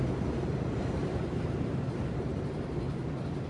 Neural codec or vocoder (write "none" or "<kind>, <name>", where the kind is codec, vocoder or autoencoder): vocoder, BigVGAN v2